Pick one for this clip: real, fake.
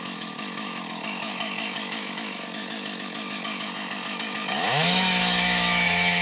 fake